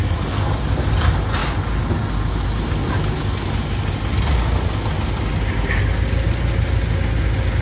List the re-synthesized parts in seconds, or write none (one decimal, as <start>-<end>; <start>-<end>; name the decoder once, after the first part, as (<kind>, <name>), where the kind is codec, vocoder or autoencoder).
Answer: none